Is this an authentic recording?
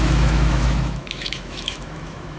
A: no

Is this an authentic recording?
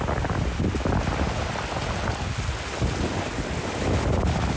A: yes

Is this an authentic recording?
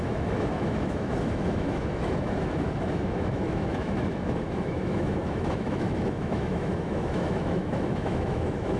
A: no